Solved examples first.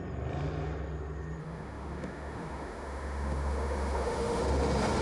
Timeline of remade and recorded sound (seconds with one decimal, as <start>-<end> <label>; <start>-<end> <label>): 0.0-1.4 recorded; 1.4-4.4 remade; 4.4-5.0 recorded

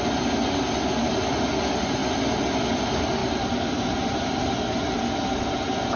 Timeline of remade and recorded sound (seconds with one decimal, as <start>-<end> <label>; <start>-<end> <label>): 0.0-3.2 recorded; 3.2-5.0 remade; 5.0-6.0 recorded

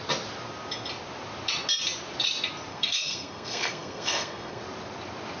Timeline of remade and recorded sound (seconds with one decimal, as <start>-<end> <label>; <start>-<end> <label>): 0.0-2.7 recorded; 2.7-4.6 remade; 4.6-5.4 recorded

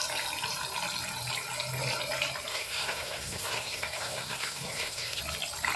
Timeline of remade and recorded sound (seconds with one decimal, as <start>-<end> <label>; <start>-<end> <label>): 0.0-2.5 recorded; 2.5-5.2 remade; 5.2-5.8 recorded

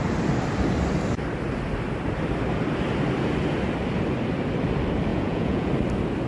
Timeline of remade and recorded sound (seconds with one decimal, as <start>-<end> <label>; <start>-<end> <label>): 0.0-5.1 recorded; 5.1-5.7 remade; 5.7-6.3 recorded

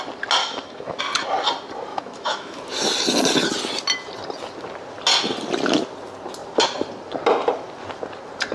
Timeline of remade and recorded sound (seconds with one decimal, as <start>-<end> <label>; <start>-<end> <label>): 0.0-0.4 recorded; 0.4-1.0 remade; 1.0-1.9 recorded; 1.9-2.6 remade; 2.6-8.5 recorded